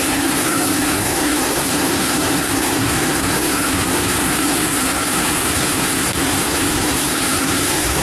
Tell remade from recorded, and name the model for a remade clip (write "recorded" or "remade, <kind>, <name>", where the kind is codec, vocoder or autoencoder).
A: remade, codec, SNAC